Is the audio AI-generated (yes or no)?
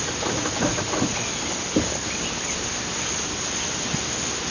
no